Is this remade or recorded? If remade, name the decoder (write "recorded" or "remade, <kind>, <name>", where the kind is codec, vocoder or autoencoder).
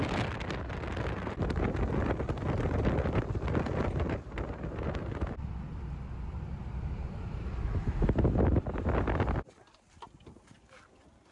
recorded